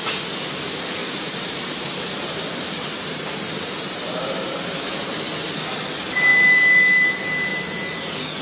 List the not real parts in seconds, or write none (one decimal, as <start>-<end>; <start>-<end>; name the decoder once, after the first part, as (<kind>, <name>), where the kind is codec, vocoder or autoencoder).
1.0-5.1 (vocoder, BigVGAN v2)